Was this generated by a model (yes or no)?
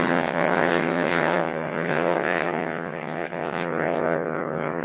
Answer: yes